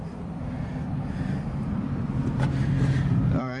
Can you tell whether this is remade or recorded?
remade